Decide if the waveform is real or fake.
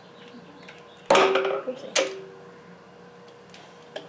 real